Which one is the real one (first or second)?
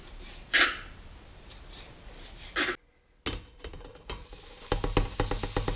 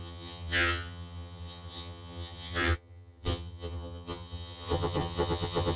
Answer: first